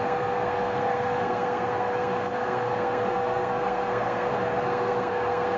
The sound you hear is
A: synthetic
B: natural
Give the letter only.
A